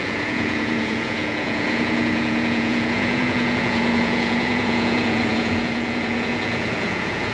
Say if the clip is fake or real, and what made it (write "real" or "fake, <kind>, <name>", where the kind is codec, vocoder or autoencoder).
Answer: fake, vocoder, Vocos